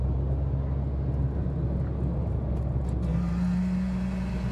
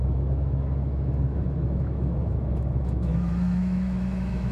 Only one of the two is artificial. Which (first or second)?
second